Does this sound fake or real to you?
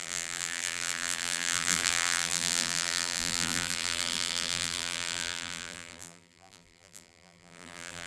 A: fake